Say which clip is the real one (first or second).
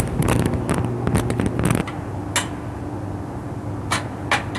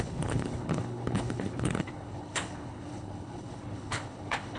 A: first